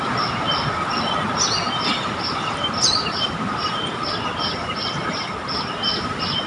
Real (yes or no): yes